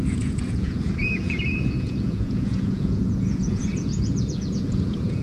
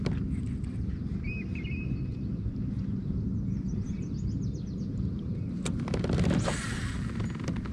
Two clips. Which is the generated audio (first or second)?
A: first